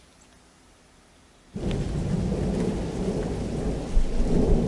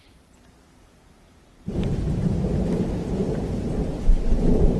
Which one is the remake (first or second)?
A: second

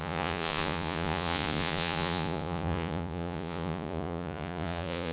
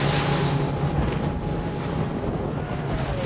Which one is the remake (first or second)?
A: first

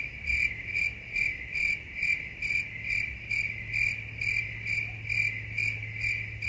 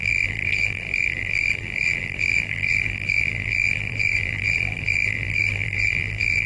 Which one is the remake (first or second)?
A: second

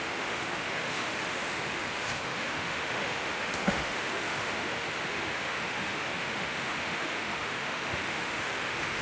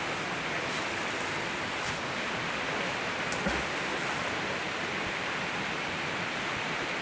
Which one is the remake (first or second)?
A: first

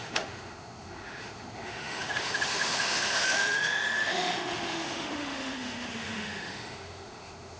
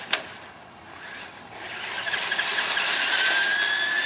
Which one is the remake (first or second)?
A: first